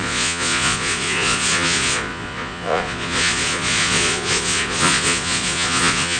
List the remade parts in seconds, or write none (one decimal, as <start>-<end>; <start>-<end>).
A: 0.0-6.2